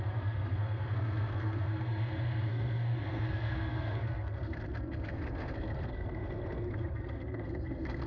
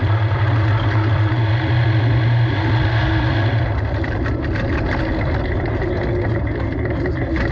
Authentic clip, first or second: second